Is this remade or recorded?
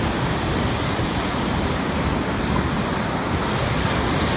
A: recorded